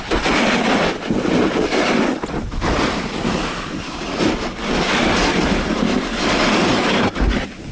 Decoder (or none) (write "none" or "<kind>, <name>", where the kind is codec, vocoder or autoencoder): none